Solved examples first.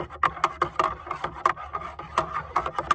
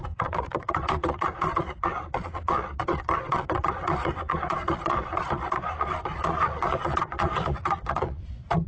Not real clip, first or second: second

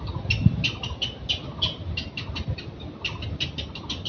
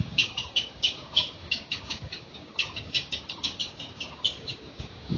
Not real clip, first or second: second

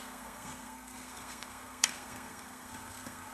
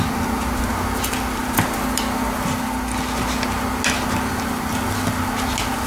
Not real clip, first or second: first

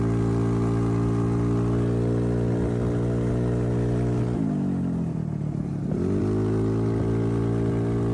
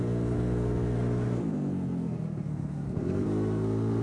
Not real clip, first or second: second